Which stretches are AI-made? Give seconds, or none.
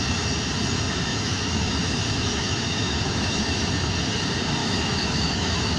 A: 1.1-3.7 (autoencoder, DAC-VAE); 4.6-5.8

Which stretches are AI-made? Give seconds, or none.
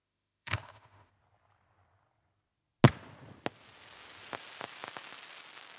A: 0.0-1.1 (autoencoder, DAC-VAE)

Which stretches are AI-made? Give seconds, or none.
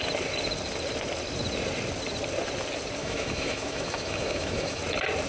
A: 3.0-4.8 (autoencoder, DAC-VAE)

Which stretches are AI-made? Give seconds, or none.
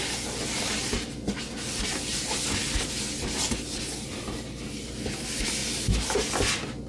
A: none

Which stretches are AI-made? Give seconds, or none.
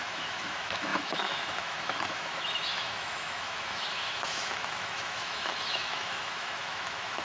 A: 0.0-7.2 (autoencoder, DAC-VAE)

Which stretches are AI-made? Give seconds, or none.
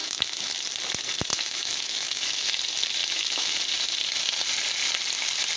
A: 0.0-0.6 (autoencoder, DAC-VAE); 1.3-2.6; 3.0-3.6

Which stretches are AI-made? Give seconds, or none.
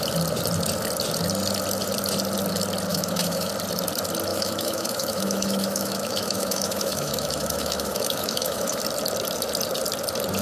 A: 2.9-3.5 (autoencoder, DAC-VAE); 4.3-8.8